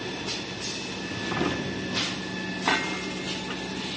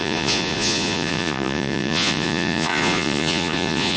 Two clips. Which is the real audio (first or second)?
first